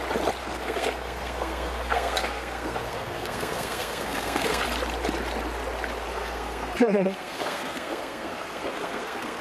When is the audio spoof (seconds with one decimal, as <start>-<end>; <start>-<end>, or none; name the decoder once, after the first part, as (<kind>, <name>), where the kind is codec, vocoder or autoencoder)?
0.4-4.6 (codec, SNAC); 6.1-9.4